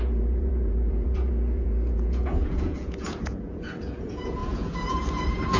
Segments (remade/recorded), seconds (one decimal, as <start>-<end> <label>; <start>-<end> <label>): 0.0-5.6 remade